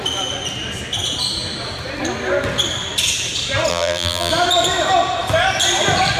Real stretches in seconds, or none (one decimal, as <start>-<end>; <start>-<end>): 0.0-3.7; 4.3-6.2

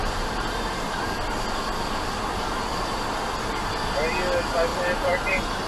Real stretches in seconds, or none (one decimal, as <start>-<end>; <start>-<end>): 1.0-2.7; 3.3-4.7

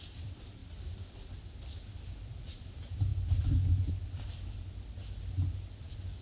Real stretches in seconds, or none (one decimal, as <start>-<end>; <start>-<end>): 0.0-6.2

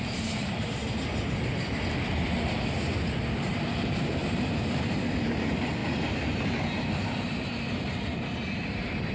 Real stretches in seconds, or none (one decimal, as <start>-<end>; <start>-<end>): 0.8-3.5; 5.8-6.8

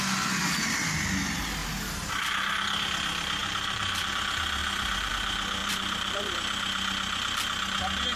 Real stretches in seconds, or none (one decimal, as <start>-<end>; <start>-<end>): 0.0-1.6; 2.1-3.4; 4.1-4.6; 5.1-5.6; 6.3-8.2

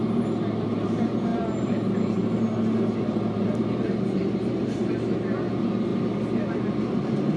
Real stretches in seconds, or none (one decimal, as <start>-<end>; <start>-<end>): 0.0-1.3; 4.9-7.4